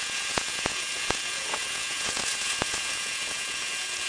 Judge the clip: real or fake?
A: fake